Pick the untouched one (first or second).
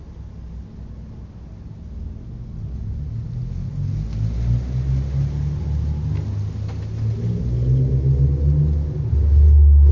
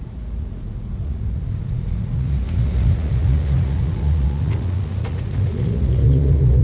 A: first